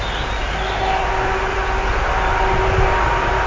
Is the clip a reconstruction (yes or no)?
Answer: no